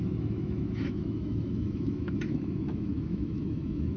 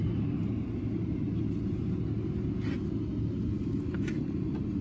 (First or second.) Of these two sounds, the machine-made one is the first